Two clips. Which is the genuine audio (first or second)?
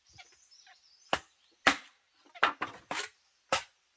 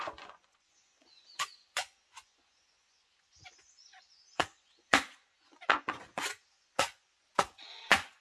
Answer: first